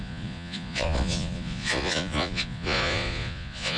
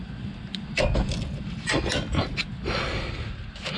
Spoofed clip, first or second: first